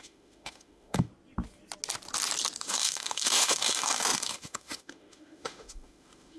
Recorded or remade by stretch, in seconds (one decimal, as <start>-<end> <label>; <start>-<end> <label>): 0.0-1.1 remade; 1.1-2.6 recorded; 2.6-6.4 remade